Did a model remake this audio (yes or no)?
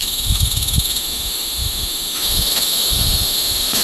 yes